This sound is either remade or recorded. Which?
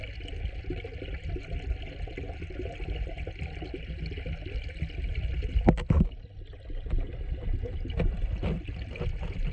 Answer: recorded